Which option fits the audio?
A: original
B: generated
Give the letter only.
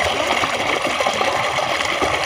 A